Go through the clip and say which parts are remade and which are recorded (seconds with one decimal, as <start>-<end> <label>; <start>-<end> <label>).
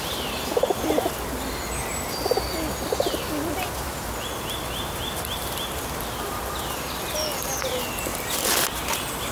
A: 0.0-8.1 recorded; 8.1-9.3 remade